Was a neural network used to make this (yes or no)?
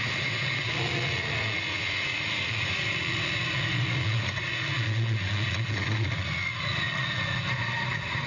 yes